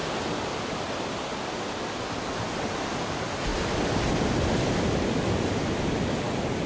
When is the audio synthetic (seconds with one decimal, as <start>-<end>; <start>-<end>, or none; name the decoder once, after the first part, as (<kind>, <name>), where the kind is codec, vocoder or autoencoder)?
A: 1.7-6.7 (vocoder, BigVGAN v2)